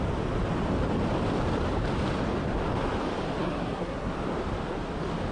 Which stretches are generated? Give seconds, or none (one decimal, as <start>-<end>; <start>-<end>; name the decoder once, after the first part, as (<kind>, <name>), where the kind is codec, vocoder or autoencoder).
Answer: 3.4-4.1 (codec, SNAC)